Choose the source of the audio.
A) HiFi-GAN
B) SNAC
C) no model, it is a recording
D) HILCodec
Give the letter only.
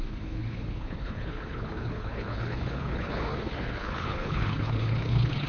D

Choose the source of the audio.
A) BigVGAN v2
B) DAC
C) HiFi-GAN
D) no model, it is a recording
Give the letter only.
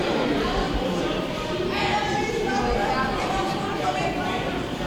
A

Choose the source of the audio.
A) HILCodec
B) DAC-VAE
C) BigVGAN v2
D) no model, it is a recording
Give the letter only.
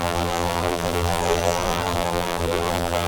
C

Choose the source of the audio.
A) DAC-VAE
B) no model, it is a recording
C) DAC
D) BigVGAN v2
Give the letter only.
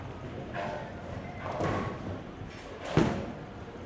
B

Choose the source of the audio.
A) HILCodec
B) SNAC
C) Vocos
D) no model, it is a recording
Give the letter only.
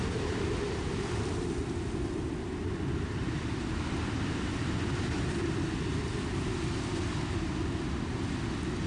D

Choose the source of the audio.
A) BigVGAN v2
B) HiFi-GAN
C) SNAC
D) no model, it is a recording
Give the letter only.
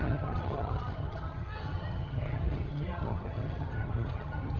B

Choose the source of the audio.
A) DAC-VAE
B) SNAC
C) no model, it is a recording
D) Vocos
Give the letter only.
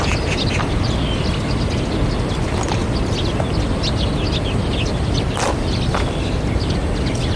C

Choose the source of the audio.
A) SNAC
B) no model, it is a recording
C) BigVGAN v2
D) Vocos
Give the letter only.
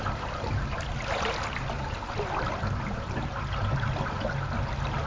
B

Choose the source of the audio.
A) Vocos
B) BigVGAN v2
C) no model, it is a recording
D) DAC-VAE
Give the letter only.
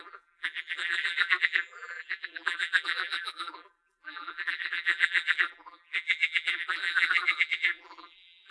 B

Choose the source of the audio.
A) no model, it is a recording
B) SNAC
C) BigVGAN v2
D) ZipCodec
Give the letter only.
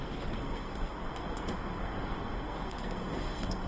B